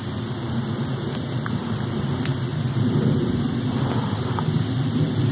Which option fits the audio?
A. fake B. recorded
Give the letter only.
B